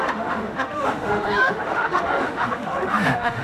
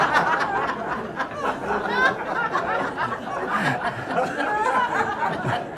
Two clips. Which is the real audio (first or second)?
second